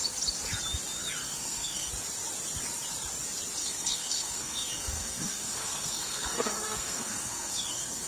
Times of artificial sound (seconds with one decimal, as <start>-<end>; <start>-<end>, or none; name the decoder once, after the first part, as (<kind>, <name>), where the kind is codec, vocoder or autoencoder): 1.2-1.9 (codec, SNAC); 3.6-8.1